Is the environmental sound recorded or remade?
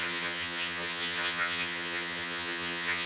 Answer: remade